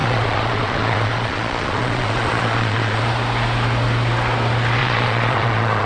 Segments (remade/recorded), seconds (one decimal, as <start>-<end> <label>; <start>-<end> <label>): 0.0-3.0 remade; 3.0-4.8 recorded; 4.8-5.9 remade